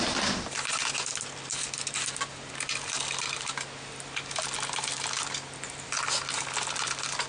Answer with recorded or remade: recorded